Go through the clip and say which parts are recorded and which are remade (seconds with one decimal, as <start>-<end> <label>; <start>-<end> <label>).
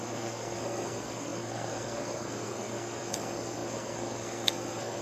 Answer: 0.0-5.0 remade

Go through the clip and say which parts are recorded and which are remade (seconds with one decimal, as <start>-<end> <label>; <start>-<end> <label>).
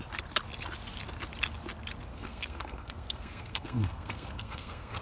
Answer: 0.0-2.1 recorded; 2.1-5.0 remade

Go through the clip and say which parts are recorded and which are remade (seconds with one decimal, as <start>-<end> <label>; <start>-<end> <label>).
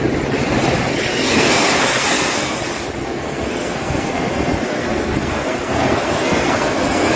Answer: 0.0-1.1 recorded; 1.1-2.6 remade; 2.6-3.0 recorded; 3.0-7.2 remade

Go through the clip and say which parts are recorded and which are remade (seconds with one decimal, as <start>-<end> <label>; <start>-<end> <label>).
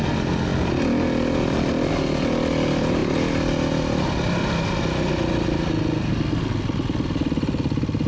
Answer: 0.0-8.1 recorded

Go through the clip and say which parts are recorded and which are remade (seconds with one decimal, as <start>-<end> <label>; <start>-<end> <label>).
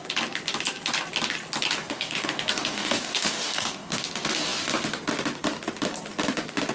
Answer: 0.0-1.8 recorded; 1.8-4.0 remade; 4.0-6.7 recorded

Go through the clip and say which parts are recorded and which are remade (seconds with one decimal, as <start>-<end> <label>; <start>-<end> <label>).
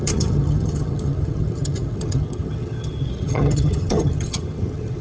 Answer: 0.0-5.0 remade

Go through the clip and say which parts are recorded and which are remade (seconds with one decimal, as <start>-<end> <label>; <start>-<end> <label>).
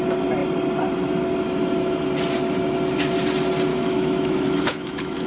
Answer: 0.0-3.7 recorded; 3.7-5.3 remade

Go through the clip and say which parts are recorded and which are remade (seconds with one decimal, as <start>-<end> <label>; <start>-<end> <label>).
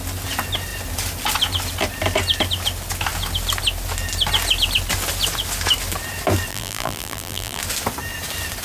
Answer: 0.0-6.5 recorded; 6.5-7.6 remade; 7.6-8.6 recorded